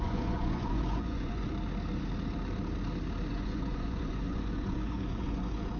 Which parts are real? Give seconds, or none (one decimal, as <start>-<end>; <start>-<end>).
1.5-3.3